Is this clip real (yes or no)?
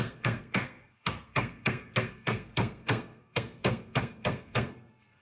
no